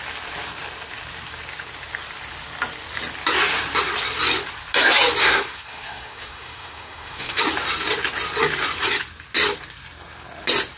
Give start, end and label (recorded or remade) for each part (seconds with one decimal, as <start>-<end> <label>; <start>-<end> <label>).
0.0-5.2 recorded; 5.2-7.4 remade; 7.4-10.8 recorded